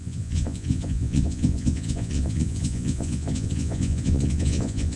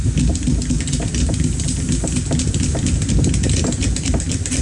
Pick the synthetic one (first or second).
first